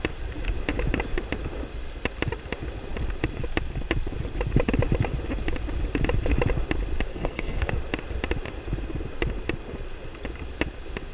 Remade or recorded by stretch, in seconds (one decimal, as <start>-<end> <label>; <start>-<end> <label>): 0.0-7.1 recorded; 7.1-7.7 remade; 7.7-11.1 recorded